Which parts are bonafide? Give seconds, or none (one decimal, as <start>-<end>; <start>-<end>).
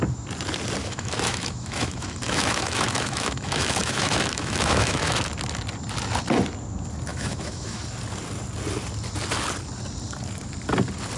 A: 0.0-0.8; 5.3-7.1; 7.8-11.2